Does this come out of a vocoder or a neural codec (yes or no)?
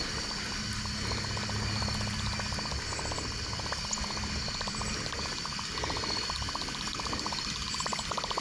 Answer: no